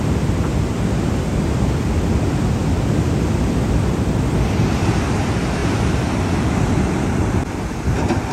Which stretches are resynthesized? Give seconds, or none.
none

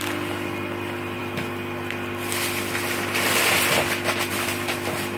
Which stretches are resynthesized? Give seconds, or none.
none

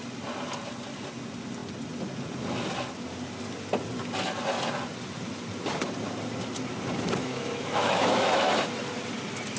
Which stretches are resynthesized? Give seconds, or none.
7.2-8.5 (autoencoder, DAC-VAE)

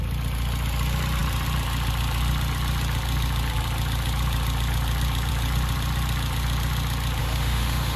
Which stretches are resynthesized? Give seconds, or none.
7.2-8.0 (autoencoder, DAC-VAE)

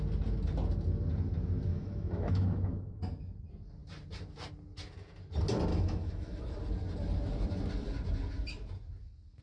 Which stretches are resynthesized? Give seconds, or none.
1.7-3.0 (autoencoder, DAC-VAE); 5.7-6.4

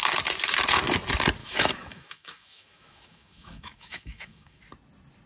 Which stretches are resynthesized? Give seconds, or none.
1.4-4.6 (autoencoder, DAC-VAE)

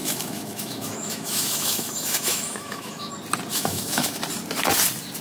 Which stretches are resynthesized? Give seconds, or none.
0.0-3.1 (autoencoder, DAC-VAE); 3.5-4.2